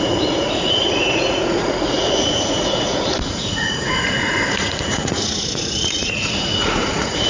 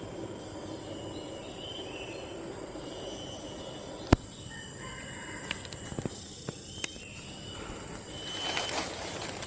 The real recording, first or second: second